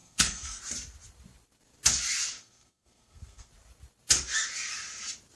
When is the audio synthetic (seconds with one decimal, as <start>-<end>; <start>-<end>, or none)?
0.0-0.6; 2.4-3.5